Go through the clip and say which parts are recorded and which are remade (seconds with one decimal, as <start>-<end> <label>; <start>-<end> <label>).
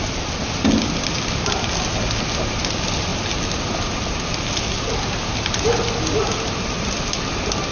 0.0-7.7 recorded